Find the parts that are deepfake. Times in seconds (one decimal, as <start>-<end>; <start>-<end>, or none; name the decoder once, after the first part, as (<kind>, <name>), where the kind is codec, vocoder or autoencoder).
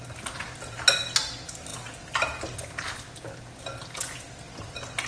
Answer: none